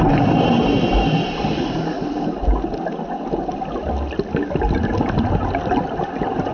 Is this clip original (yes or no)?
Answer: yes